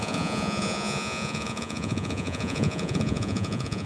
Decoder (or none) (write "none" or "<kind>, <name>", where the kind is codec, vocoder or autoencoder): vocoder, Vocos